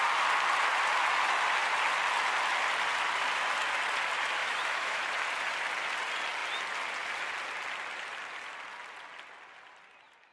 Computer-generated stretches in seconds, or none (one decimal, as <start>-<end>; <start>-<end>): 4.4-5.1